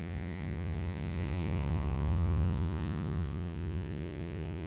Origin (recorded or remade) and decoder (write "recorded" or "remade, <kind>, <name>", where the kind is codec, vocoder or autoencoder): remade, vocoder, Vocos